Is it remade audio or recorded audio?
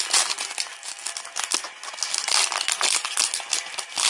recorded